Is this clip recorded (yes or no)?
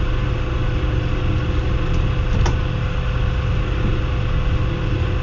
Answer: yes